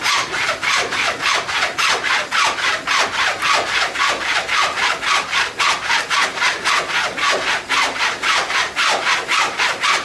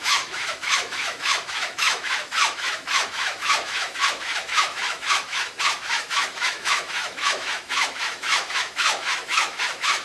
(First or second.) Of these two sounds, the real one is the first